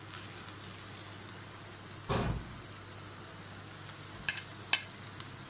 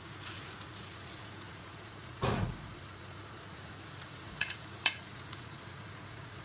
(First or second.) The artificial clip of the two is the second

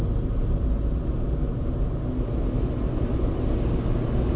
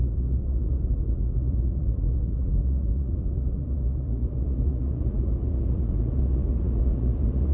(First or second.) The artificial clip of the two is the second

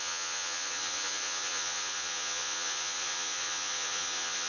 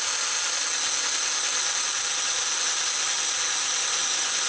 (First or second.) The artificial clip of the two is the first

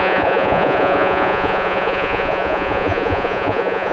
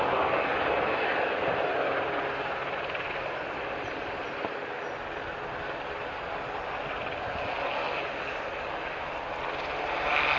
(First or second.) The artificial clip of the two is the first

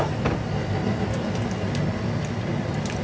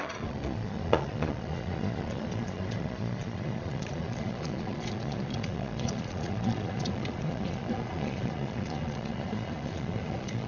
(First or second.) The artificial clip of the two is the second